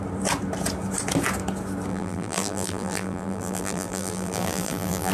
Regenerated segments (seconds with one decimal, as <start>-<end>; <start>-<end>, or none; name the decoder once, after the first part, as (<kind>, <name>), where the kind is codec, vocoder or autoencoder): 1.9-5.1 (vocoder, BigVGAN v2)